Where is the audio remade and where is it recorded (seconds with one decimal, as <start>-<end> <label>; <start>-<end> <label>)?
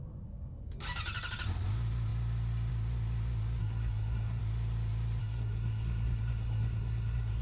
0.0-3.6 recorded; 3.6-4.4 remade; 4.4-5.2 recorded; 5.2-7.4 remade